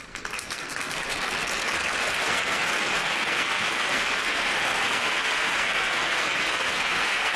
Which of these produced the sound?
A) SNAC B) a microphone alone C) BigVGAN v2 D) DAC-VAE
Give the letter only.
A